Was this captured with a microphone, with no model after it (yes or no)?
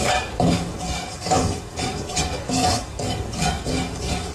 no